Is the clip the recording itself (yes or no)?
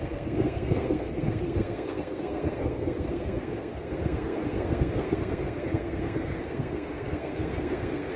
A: no